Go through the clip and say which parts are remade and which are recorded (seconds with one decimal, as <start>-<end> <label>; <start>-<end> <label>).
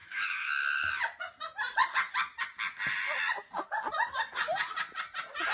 0.0-0.9 remade; 0.9-5.5 recorded